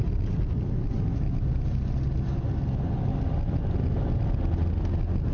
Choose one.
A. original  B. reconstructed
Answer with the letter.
A